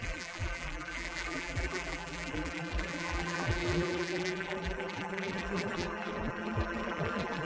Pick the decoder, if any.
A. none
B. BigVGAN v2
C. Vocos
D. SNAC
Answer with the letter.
B